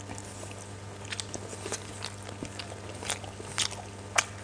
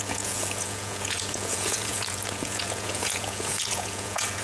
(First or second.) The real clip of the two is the first